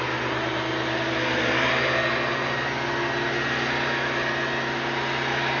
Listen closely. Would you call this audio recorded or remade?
recorded